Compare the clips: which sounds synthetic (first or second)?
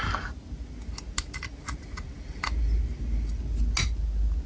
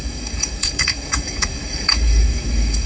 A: second